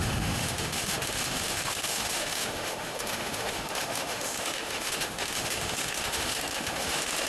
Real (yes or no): no